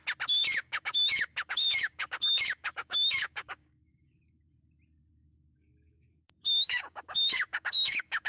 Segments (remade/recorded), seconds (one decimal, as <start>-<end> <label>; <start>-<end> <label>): 0.0-0.4 recorded; 0.4-4.5 remade; 4.5-5.1 recorded; 5.1-8.3 remade